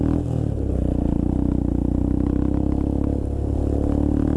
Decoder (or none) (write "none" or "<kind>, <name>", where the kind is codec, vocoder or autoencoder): none